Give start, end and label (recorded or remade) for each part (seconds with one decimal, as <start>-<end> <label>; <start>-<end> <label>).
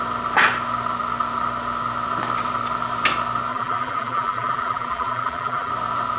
0.0-3.5 recorded; 3.5-5.7 remade; 5.7-6.2 recorded